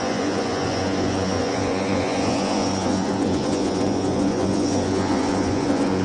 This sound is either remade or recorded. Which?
remade